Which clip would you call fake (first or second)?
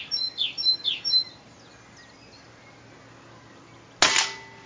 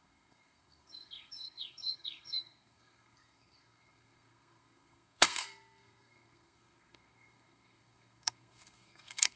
second